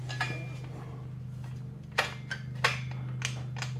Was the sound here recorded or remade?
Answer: recorded